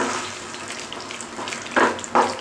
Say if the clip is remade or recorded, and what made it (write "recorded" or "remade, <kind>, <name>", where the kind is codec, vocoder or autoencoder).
remade, vocoder, BigVGAN v2